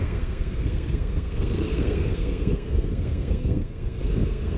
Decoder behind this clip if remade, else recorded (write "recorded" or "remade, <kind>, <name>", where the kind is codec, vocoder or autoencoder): remade, codec, SNAC